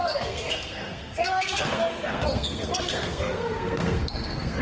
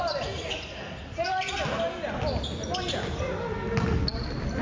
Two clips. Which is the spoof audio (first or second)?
first